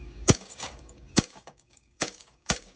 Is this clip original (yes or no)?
no